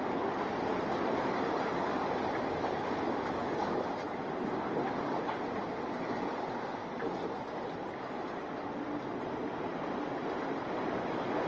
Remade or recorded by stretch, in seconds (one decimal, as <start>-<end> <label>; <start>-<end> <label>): 0.0-11.5 recorded